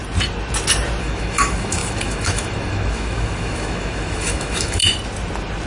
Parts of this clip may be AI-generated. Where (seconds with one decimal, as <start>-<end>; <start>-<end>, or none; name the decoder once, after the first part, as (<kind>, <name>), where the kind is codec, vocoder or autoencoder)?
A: 1.0-4.8 (autoencoder, DAC-VAE)